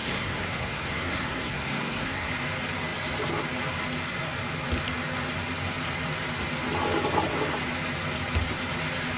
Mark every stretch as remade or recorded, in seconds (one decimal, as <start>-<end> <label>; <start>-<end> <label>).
0.0-2.3 remade; 2.3-9.2 recorded